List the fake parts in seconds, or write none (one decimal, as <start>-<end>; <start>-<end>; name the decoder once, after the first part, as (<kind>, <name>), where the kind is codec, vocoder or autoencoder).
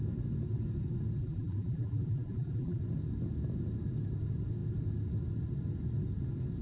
1.2-2.8 (vocoder, BigVGAN v2)